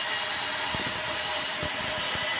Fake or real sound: real